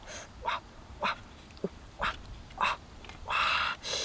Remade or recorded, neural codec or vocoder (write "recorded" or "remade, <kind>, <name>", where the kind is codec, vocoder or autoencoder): remade, vocoder, BigVGAN v2